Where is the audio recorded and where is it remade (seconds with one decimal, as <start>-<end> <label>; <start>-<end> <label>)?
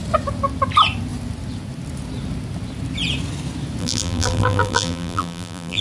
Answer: 0.0-3.8 recorded; 3.8-5.8 remade